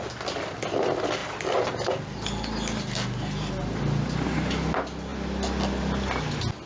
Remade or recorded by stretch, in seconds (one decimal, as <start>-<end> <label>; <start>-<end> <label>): 0.0-6.7 recorded